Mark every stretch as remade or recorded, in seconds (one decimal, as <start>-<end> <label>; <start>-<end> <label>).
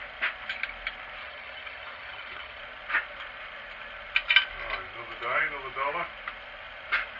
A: 0.0-1.2 recorded; 1.2-2.6 remade; 2.6-7.2 recorded